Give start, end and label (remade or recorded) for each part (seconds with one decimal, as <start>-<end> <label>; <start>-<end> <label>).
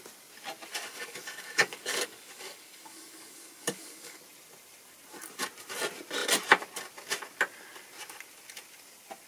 0.0-0.9 recorded; 0.9-4.2 remade; 4.2-9.3 recorded